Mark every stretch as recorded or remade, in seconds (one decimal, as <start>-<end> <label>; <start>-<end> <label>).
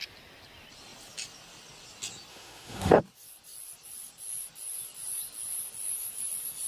0.0-2.3 recorded; 2.3-3.0 remade; 3.0-6.7 recorded